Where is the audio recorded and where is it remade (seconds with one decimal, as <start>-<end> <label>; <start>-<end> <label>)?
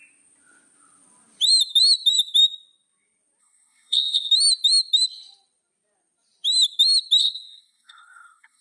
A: 0.0-3.4 recorded; 3.4-4.3 remade; 4.3-7.2 recorded; 7.2-8.6 remade